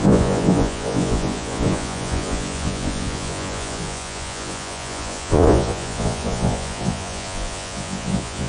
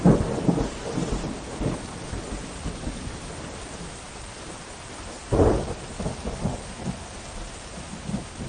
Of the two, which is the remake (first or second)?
first